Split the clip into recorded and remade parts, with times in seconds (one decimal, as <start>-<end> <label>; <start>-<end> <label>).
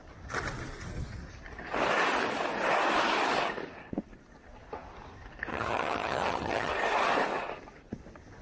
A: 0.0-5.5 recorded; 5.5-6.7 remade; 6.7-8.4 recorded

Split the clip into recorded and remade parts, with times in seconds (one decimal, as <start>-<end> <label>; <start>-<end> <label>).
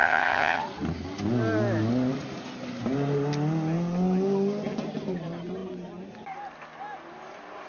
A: 0.0-0.6 remade; 0.6-7.7 recorded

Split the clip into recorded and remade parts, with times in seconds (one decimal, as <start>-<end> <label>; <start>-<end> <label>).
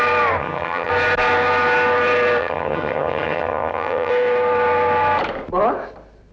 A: 0.0-0.4 recorded; 0.4-0.9 remade; 0.9-2.4 recorded; 2.4-4.1 remade; 4.1-6.3 recorded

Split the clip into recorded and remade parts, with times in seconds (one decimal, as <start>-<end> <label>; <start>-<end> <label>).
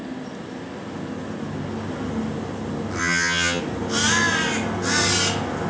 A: 0.0-3.0 recorded; 3.0-3.6 remade; 3.6-5.7 recorded